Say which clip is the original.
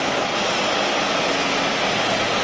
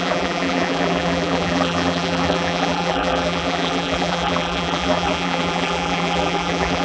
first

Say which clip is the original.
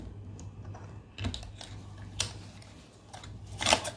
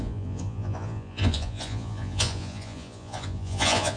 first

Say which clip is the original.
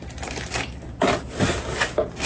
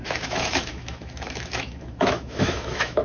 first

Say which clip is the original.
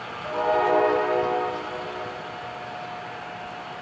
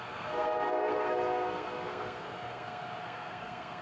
first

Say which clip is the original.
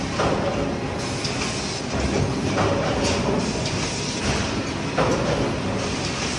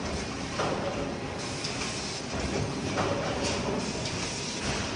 first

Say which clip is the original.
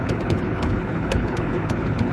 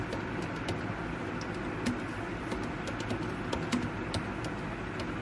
second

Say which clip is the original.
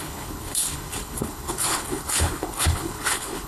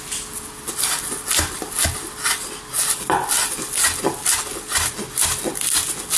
second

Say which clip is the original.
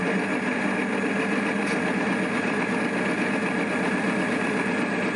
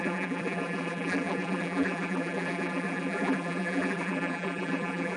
first